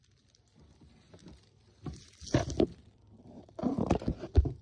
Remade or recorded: recorded